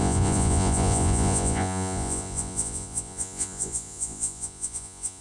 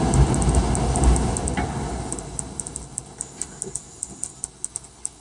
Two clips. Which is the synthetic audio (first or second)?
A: first